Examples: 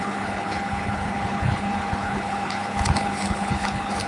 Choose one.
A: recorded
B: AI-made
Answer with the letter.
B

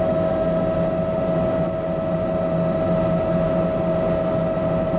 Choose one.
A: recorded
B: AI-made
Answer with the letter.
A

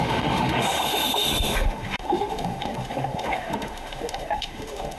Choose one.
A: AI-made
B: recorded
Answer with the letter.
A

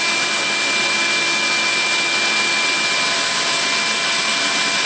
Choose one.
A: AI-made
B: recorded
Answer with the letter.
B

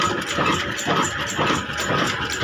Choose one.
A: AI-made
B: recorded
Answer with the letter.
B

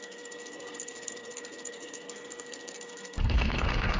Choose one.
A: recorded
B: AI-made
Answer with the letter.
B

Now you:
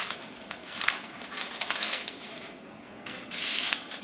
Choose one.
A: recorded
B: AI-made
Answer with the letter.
B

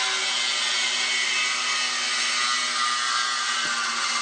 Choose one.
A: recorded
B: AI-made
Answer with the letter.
A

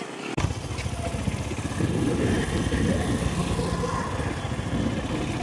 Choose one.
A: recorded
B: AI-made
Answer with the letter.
A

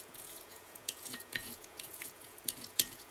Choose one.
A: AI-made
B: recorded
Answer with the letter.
A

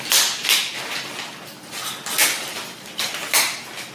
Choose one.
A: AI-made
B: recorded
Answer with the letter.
B